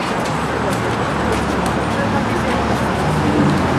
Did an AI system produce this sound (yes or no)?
no